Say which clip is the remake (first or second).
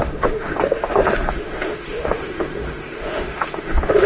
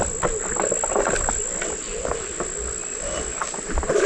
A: first